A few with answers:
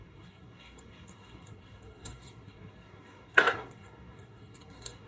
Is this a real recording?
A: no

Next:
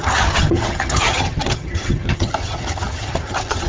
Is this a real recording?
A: no